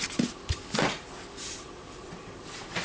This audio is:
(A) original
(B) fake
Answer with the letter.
A